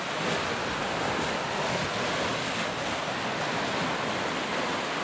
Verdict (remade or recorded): recorded